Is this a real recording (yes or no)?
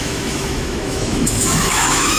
no